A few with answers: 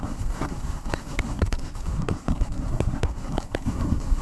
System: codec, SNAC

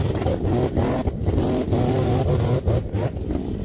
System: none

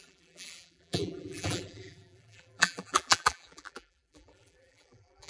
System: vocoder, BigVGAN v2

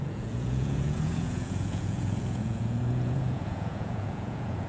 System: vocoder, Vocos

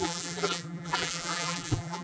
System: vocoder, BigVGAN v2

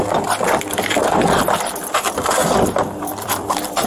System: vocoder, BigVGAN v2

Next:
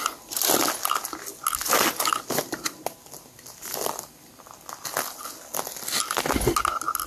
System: none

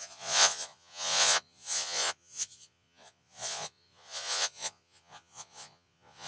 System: vocoder, Vocos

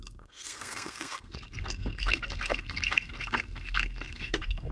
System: codec, SNAC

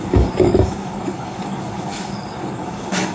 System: codec, DAC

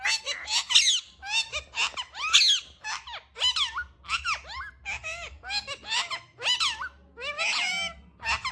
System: none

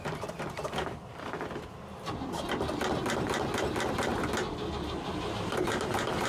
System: none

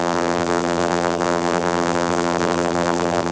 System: vocoder, BigVGAN v2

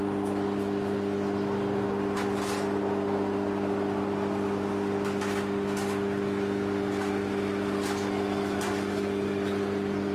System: none